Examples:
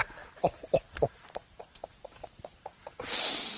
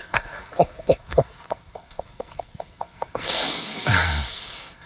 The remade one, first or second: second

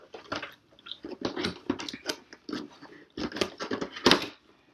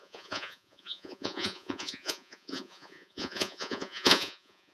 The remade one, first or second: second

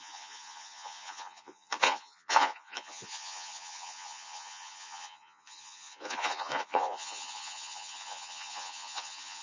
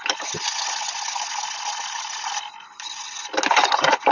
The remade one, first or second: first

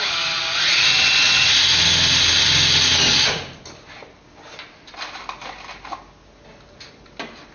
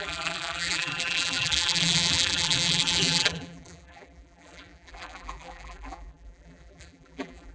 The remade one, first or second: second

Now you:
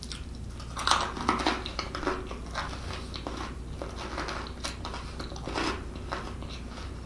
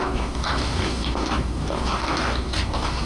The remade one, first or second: second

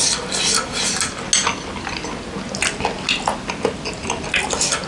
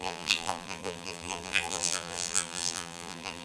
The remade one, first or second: second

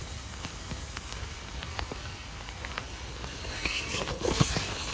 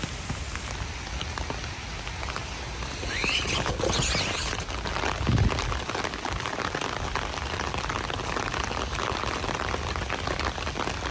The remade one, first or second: first